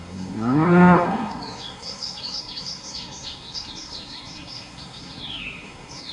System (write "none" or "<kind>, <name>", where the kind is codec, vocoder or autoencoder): codec, SNAC